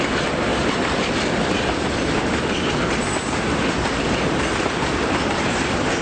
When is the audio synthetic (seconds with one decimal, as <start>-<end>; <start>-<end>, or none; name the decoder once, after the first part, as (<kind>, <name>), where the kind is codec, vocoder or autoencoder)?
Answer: 0.0-6.0 (vocoder, BigVGAN v2)